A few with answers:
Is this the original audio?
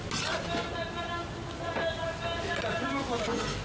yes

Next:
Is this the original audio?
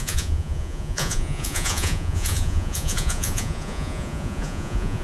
no